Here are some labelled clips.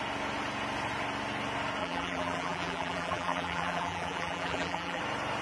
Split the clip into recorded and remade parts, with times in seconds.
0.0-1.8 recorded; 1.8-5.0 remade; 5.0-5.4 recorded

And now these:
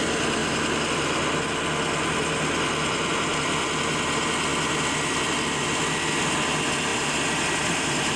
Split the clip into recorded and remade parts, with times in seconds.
0.0-6.9 recorded; 6.9-8.2 remade

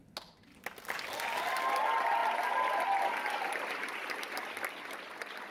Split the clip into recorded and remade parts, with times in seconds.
0.0-5.5 recorded

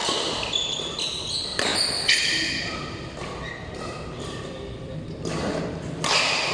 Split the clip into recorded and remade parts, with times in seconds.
0.0-0.7 remade; 0.7-1.7 recorded; 1.7-5.6 remade; 5.6-6.5 recorded